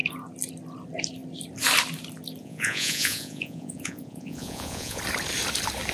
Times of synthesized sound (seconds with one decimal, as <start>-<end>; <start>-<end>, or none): 2.4-5.0